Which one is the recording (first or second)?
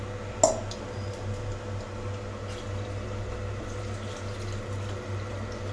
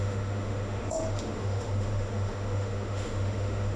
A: first